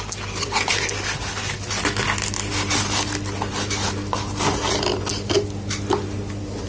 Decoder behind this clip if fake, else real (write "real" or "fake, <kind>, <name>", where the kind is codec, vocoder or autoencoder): real